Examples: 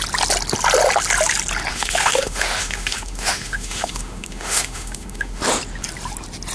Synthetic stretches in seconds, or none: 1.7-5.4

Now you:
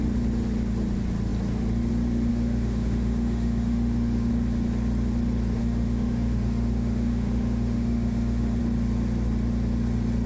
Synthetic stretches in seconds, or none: 2.3-4.3; 5.6-8.6